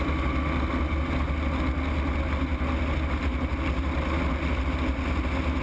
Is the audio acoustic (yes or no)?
yes